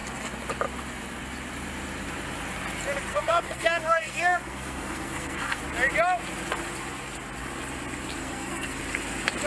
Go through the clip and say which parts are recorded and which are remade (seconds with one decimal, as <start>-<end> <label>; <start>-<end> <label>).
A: 0.0-3.1 recorded; 3.1-5.6 remade; 5.6-8.2 recorded; 8.2-8.8 remade; 8.8-9.5 recorded